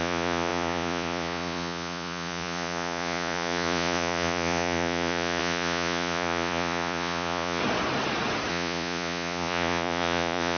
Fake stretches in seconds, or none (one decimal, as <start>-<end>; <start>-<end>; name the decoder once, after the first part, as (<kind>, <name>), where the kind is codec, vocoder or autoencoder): 0.0-7.6 (vocoder, Vocos); 8.5-10.6